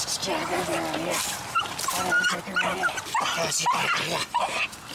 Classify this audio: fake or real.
real